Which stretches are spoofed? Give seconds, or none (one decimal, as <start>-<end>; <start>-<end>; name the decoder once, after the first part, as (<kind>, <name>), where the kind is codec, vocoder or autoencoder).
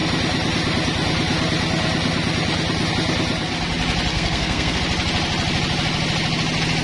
4.1-4.8 (codec, SNAC)